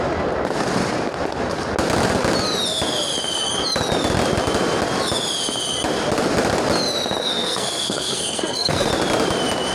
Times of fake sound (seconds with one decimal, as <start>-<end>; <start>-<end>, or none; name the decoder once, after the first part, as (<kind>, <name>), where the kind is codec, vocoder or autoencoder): 7.2-8.9 (codec, SNAC)

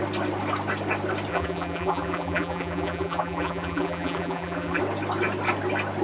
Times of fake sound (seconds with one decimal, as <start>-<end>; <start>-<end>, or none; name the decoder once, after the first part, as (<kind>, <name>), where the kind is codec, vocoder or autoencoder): 1.3-4.8 (vocoder, BigVGAN v2)

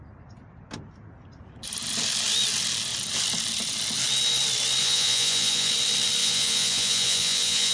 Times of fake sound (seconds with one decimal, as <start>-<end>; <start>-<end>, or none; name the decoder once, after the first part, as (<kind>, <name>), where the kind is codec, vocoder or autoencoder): 4.8-5.7 (vocoder, Vocos); 6.2-7.7

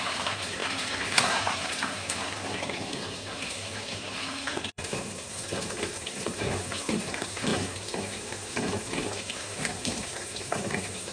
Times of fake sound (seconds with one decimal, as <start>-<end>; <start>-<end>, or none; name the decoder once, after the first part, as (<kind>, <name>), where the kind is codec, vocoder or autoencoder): 0.0-11.1 (codec, SNAC)

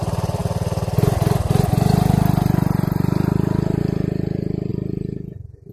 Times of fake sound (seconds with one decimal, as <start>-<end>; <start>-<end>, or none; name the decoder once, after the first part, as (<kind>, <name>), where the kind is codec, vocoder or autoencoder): none

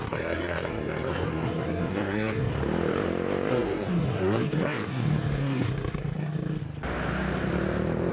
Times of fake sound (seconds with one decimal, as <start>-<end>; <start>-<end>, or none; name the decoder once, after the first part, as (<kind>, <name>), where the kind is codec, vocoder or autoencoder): 0.0-2.5 (codec, SNAC); 3.5-6.6